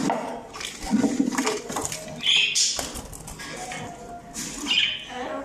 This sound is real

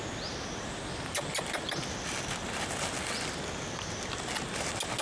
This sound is real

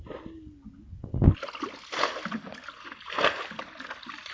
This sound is real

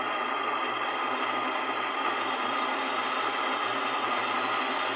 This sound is fake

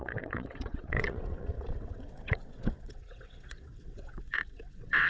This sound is fake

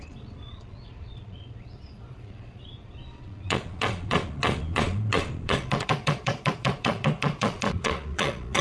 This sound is fake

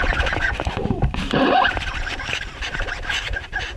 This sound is fake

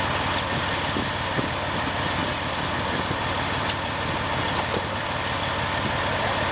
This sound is fake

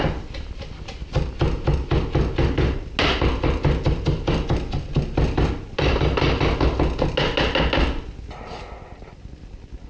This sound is real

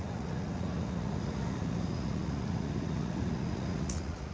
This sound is fake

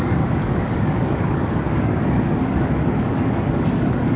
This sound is fake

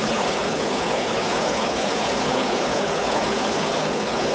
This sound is fake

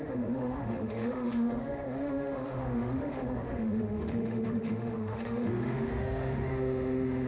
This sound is fake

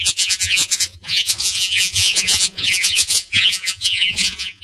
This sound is fake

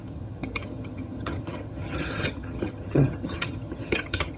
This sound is fake